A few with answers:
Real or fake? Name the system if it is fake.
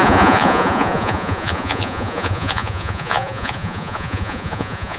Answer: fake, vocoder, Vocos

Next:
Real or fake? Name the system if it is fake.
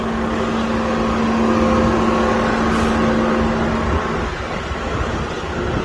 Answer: real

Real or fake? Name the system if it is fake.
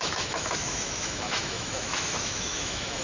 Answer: fake, autoencoder, DAC-VAE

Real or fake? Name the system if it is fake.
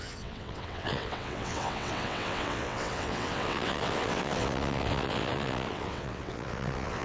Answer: fake, vocoder, WaveNeXt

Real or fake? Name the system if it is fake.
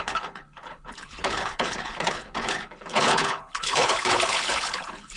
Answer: fake, codec, HILCodec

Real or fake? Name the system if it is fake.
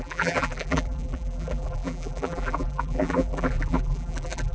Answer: fake, vocoder, BigVGAN v2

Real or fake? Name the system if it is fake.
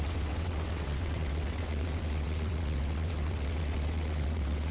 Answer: fake, vocoder, WaveNeXt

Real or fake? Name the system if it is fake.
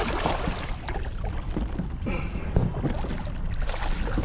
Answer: real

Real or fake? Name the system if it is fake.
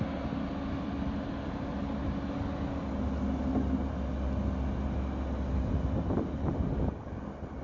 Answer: real